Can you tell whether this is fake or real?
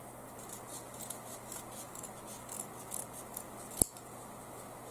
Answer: real